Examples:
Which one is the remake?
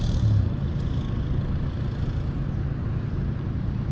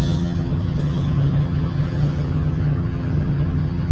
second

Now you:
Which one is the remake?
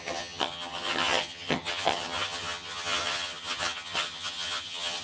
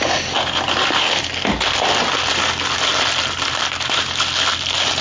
first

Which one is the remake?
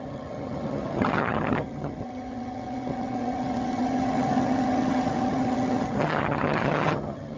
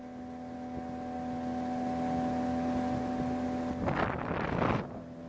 first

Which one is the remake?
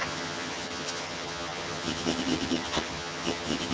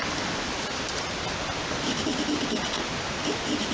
first